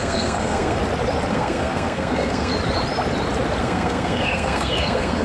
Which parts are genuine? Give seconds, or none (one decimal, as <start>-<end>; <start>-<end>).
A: 0.8-1.3; 2.5-3.6